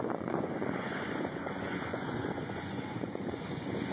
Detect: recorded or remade remade